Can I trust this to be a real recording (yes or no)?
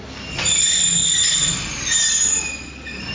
yes